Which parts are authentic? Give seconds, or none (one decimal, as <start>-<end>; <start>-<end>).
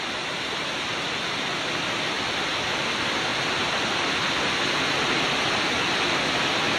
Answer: 0.0-6.8